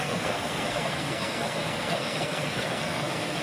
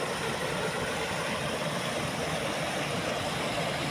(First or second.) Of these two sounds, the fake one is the first